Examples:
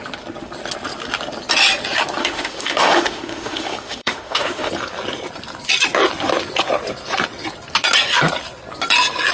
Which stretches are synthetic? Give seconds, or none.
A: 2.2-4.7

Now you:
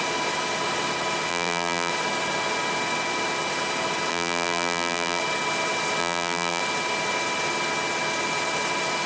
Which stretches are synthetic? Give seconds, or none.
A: 1.3-1.9; 4.1-5.2; 6.0-6.6

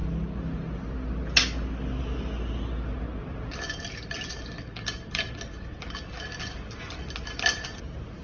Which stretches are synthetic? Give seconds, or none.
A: none